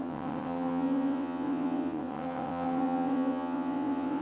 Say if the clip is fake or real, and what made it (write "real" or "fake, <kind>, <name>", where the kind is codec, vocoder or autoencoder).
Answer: fake, vocoder, WaveNeXt